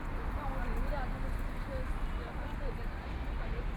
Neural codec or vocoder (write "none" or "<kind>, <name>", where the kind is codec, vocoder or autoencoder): none